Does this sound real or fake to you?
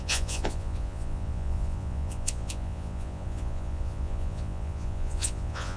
fake